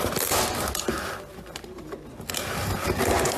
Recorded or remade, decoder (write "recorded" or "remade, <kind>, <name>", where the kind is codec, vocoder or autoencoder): recorded